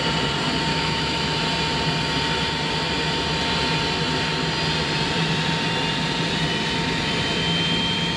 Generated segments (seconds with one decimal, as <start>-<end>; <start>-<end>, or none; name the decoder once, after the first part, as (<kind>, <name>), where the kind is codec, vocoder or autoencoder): 0.7-1.4 (autoencoder, DAC-VAE)